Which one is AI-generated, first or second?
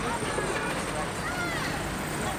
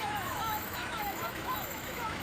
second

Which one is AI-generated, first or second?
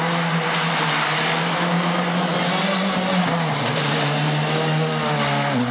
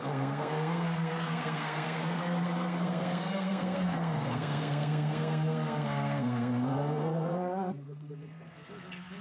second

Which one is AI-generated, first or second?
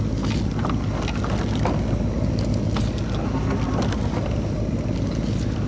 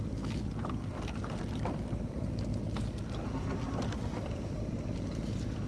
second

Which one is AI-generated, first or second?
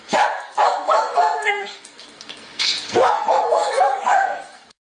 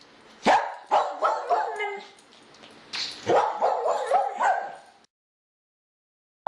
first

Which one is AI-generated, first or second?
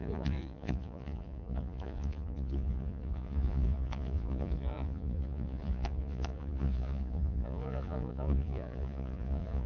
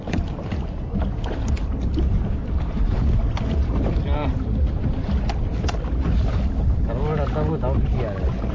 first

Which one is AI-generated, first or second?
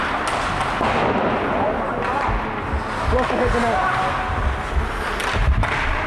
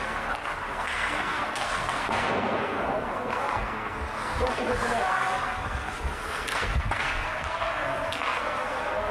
second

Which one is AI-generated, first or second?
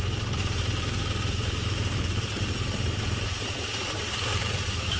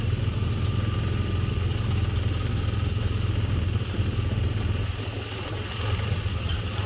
first